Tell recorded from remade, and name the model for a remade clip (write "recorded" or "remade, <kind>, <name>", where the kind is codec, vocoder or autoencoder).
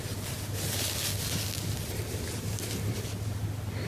recorded